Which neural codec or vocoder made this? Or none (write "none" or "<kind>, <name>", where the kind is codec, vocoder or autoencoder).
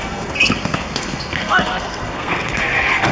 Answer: codec, SNAC